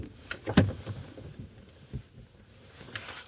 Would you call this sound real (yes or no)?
yes